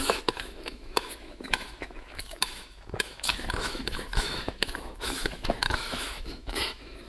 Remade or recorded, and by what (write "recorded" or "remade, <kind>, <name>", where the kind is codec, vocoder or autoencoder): remade, autoencoder, DAC-VAE